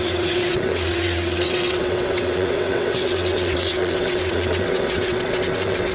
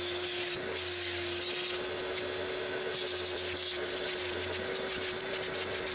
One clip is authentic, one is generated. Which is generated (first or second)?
first